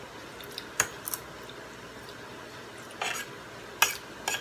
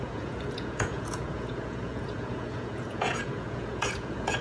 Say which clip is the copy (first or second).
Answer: second